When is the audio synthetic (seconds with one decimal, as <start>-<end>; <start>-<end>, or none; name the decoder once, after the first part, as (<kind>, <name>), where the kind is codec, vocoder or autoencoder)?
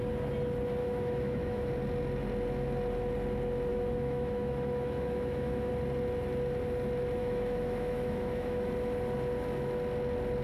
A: 0.8-1.7 (autoencoder, DAC-VAE); 3.7-5.7; 7.2-8.7